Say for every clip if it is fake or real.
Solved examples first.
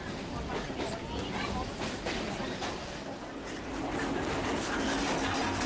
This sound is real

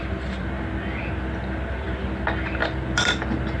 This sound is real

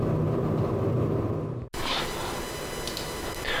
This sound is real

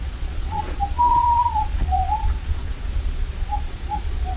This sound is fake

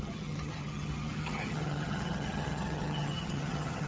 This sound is fake